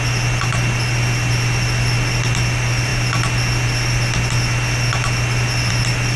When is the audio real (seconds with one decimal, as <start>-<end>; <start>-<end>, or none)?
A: 0.0-6.2

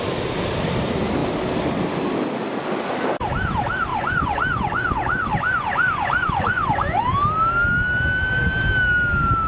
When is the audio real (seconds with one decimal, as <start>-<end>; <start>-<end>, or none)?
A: 0.0-3.9; 7.0-9.5